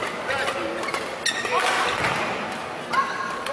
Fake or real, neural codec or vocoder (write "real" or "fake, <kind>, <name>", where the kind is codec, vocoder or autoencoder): real